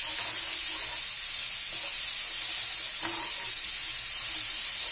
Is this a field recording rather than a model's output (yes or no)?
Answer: yes